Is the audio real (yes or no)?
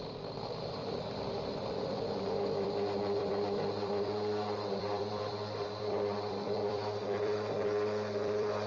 no